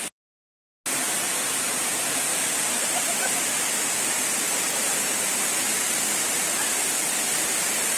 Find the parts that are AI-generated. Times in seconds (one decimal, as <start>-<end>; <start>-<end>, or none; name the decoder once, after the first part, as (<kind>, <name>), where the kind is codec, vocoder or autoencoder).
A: none